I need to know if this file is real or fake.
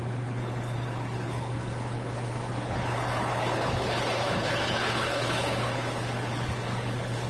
fake